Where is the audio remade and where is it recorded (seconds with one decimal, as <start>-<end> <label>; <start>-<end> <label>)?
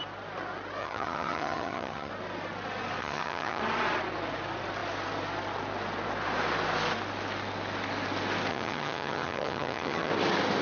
0.0-0.8 recorded; 0.8-2.1 remade; 2.1-3.0 recorded; 3.0-3.6 remade; 3.6-8.5 recorded; 8.5-10.1 remade; 10.1-10.6 recorded